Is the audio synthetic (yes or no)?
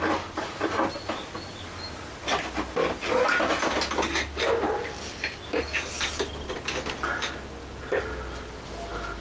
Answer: no